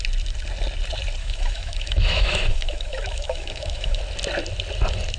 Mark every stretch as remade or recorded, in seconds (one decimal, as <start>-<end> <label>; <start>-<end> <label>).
0.0-1.2 recorded; 1.2-4.0 remade; 4.0-5.2 recorded